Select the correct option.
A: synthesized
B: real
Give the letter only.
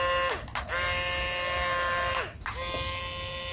B